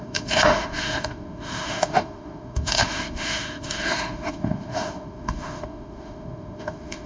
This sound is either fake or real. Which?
fake